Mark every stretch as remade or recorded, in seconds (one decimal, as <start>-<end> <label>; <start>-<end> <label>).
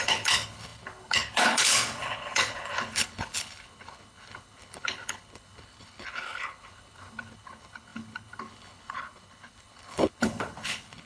0.0-11.1 remade